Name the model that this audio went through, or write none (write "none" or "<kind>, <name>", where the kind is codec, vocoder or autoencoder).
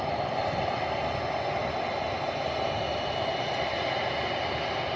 none